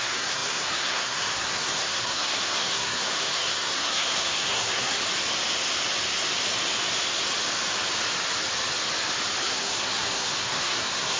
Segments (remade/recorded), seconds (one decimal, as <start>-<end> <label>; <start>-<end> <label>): 0.0-5.0 remade; 5.0-9.4 recorded; 9.4-11.2 remade